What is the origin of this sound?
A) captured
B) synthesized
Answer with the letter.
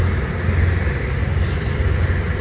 A